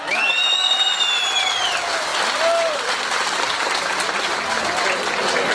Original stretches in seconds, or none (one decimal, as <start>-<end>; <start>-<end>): 0.0-5.5